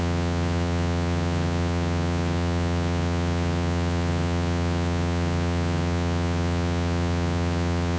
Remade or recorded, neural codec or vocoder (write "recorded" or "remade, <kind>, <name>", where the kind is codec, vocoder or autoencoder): remade, vocoder, HiFi-GAN